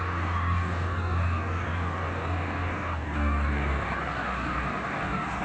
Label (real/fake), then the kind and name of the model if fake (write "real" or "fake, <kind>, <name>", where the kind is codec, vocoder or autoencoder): fake, codec, DAC